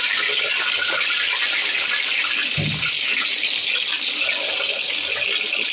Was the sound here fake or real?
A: real